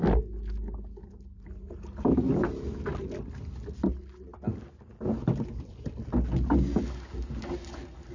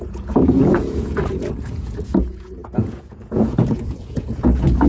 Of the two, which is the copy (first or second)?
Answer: second